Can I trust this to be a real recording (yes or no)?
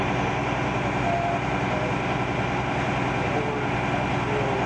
yes